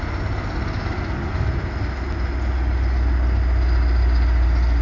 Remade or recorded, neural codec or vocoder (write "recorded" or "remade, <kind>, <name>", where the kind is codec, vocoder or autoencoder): recorded